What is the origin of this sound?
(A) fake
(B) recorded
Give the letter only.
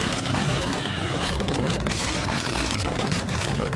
A